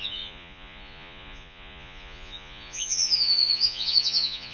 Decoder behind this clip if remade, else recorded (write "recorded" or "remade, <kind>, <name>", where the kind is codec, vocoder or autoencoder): remade, vocoder, Vocos